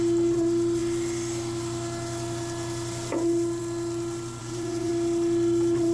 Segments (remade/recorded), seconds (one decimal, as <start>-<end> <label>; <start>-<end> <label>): 0.0-4.4 recorded; 4.4-4.9 remade; 4.9-5.9 recorded